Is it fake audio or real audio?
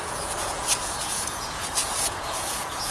fake